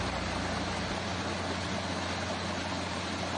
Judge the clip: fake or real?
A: real